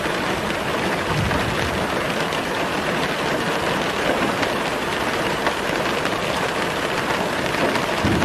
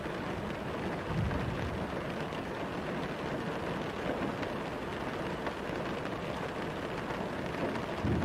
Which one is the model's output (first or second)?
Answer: first